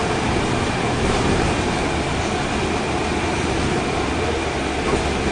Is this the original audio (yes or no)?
yes